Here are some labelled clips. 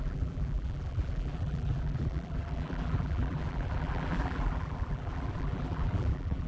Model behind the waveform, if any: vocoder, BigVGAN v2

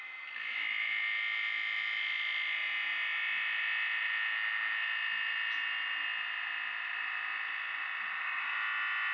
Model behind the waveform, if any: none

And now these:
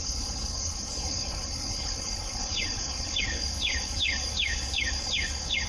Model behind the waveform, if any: codec, HILCodec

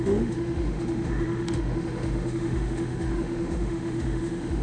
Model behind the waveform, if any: autoencoder, DAC-VAE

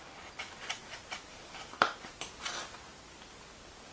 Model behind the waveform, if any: none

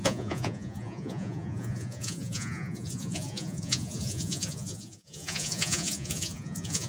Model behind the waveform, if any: vocoder, Vocos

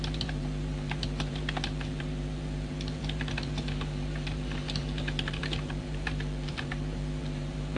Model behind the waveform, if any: vocoder, BigVGAN v2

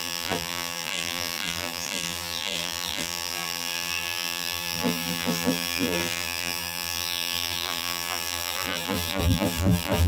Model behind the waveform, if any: vocoder, BigVGAN v2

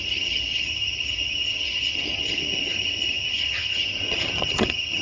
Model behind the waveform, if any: vocoder, HiFi-GAN